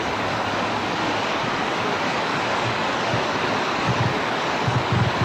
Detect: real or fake fake